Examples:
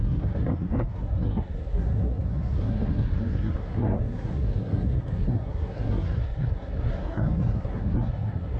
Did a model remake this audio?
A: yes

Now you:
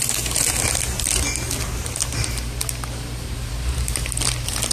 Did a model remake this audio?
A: no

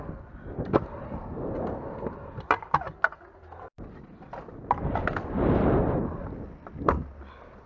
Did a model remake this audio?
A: no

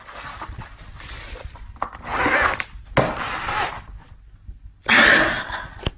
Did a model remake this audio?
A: no